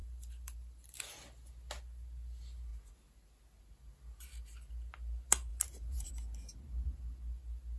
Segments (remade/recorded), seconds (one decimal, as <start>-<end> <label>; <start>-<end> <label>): 0.0-1.0 remade; 1.0-5.5 recorded; 5.5-6.1 remade; 6.1-7.8 recorded